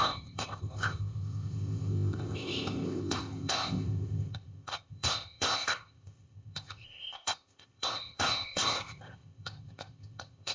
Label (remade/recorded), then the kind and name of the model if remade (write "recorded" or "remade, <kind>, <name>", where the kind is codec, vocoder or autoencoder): remade, codec, ZipCodec